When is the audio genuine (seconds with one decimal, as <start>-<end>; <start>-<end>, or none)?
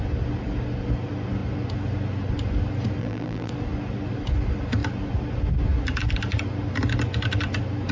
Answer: 0.0-3.0; 3.5-7.9